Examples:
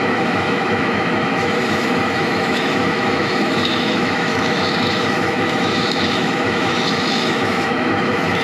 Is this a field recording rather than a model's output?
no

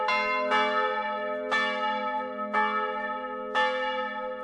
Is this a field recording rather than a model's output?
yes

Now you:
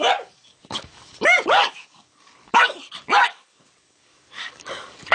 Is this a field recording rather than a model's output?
no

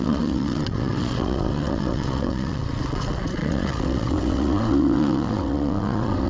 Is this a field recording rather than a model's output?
no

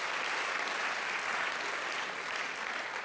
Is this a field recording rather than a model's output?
no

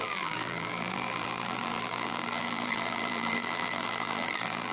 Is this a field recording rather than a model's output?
no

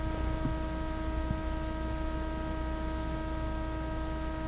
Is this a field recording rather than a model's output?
yes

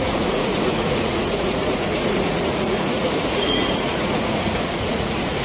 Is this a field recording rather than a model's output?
no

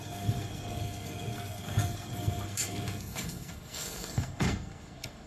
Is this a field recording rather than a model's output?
no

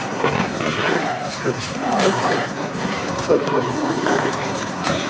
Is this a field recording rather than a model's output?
no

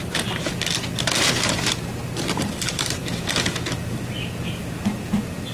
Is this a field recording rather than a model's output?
yes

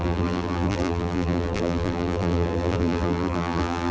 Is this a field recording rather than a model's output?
no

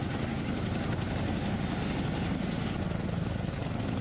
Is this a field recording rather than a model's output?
yes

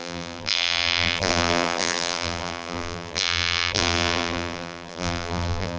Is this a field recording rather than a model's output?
no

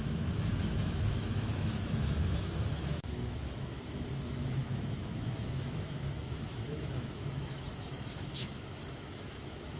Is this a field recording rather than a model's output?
no